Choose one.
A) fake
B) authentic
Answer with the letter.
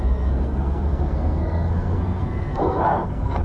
A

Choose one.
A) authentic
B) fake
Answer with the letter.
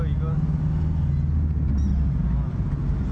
A